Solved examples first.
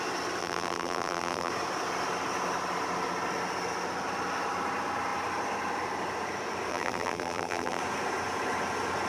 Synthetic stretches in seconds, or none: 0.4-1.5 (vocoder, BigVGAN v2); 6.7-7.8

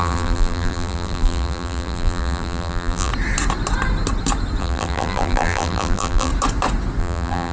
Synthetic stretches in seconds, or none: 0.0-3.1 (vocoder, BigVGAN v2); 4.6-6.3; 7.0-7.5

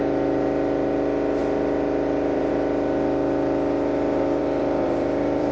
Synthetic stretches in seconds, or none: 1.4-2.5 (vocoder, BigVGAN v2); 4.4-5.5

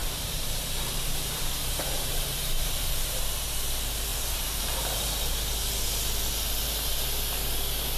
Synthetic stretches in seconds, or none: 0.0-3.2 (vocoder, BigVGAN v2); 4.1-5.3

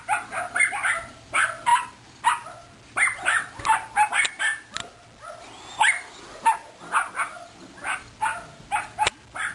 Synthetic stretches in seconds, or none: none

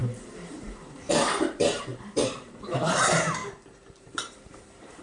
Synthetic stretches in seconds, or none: 0.0-3.4 (vocoder, BigVGAN v2); 4.0-5.0